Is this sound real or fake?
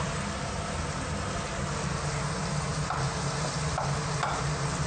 real